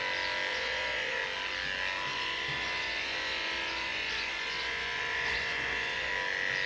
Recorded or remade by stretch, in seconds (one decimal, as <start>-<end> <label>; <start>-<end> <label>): 0.0-0.5 recorded; 0.5-1.2 remade; 1.2-2.1 recorded; 2.1-6.1 remade; 6.1-6.7 recorded